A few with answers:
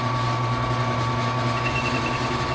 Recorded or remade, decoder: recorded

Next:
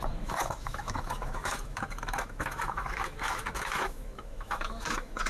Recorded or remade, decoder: remade, autoencoder, DAC-VAE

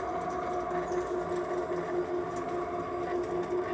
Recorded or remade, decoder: recorded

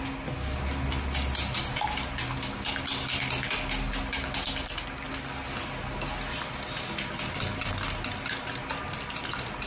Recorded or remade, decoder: recorded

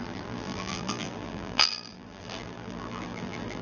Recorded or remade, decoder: remade, vocoder, BigVGAN v2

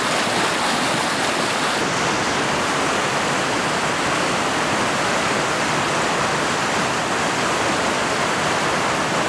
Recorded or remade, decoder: recorded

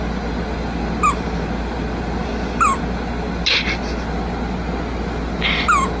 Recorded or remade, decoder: recorded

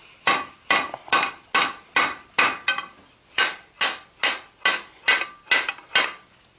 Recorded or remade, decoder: recorded